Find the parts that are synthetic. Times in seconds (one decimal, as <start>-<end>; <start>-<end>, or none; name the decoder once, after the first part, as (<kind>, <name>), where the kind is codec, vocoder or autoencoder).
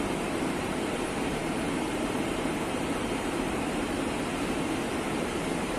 0.0-5.8 (vocoder, BigVGAN v2)